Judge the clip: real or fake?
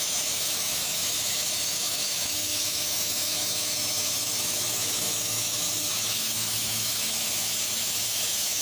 fake